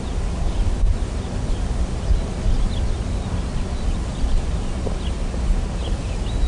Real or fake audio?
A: real